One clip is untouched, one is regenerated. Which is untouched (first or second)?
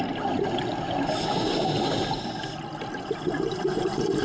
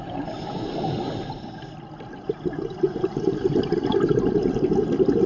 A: first